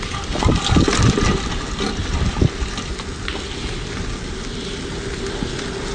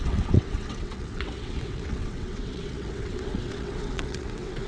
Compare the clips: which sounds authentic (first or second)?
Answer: first